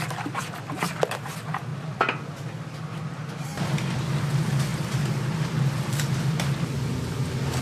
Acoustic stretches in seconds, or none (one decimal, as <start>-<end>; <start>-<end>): 0.0-7.6